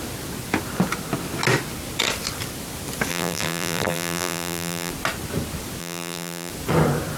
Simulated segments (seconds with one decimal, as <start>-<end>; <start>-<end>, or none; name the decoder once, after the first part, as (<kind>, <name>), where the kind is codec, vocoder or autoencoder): 3.1-4.9 (vocoder, BigVGAN v2); 5.8-6.5